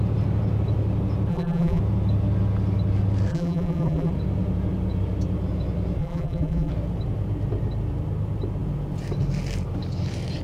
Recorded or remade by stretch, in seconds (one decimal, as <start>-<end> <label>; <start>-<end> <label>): 0.0-1.3 recorded; 1.3-1.8 remade; 1.8-3.3 recorded; 3.3-4.1 remade; 4.1-6.0 recorded; 6.0-6.7 remade; 6.7-10.4 recorded